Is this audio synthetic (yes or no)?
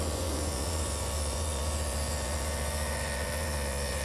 yes